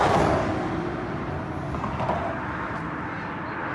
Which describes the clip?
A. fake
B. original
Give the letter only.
B